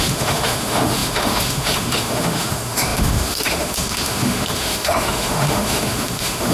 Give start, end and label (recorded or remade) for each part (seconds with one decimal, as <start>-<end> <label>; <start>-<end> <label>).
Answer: 0.0-6.5 remade